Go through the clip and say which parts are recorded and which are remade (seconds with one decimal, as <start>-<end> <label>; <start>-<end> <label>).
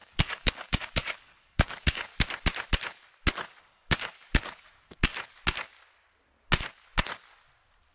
0.0-2.1 remade; 2.1-3.6 recorded; 3.6-5.1 remade; 5.1-7.9 recorded